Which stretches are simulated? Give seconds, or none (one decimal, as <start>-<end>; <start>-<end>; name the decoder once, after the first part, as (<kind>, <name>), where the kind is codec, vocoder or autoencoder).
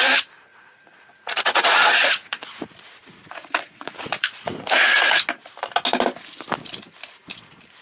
0.5-5.2 (vocoder, Vocos)